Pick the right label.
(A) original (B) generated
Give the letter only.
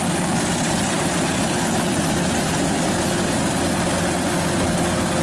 A